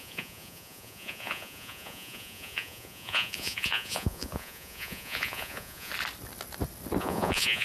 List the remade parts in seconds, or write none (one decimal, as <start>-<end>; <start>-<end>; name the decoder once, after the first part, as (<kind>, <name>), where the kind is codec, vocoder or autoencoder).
0.0-5.9 (vocoder, Vocos); 7.0-7.6